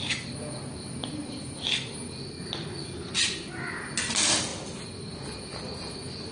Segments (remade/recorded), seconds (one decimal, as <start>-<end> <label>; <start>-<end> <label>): 0.0-6.3 recorded